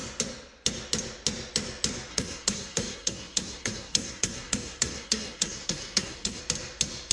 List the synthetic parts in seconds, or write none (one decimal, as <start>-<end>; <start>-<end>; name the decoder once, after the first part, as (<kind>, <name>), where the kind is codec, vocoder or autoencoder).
2.1-6.4 (codec, SNAC)